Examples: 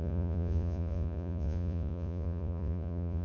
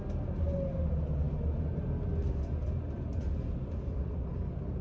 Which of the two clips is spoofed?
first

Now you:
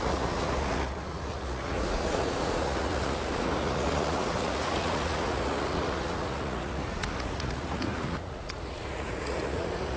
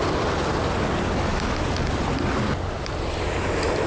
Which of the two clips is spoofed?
first